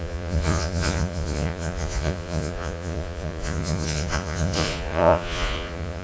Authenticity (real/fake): fake